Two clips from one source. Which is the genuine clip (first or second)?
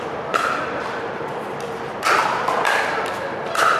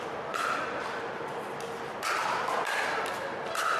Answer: second